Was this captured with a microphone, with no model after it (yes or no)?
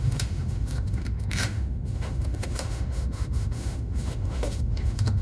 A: no